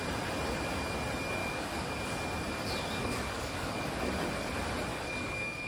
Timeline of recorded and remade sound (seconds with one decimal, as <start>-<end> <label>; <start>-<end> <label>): 0.0-1.4 recorded; 1.4-1.9 remade; 1.9-3.0 recorded; 3.0-4.0 remade; 4.0-4.9 recorded; 4.9-5.7 remade